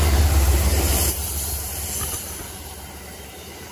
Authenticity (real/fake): fake